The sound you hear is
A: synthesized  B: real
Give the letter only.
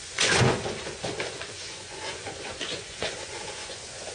A